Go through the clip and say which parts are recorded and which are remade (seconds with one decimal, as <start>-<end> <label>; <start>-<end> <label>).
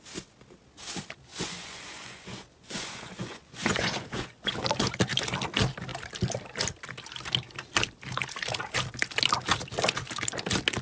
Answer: 0.0-1.3 recorded; 1.3-4.5 remade; 4.5-10.8 recorded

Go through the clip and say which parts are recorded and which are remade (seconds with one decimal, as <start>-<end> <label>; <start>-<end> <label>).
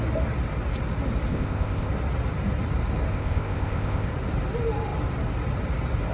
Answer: 0.0-1.3 recorded; 1.3-1.9 remade; 1.9-3.1 recorded; 3.1-4.1 remade; 4.1-6.1 recorded